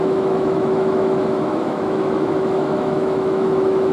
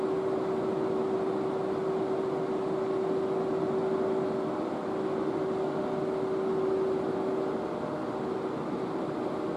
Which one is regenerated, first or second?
first